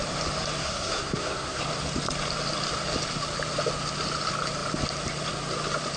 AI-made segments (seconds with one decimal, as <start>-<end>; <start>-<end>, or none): 0.6-1.6